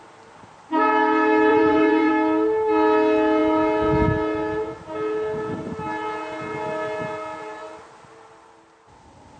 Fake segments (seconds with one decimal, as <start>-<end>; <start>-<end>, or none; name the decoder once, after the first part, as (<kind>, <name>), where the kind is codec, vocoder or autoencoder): 1.5-2.1 (vocoder, Vocos)